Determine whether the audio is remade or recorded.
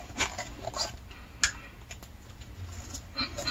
recorded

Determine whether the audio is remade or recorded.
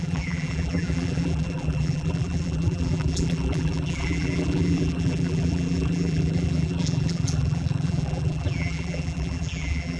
remade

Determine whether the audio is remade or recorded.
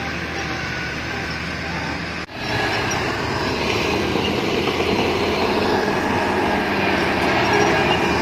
recorded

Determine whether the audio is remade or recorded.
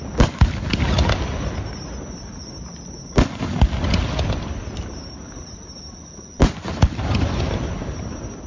recorded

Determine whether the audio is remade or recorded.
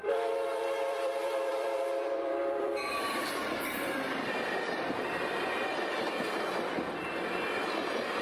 remade